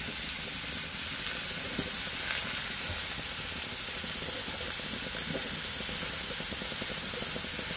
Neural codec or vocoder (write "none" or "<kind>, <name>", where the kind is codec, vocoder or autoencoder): none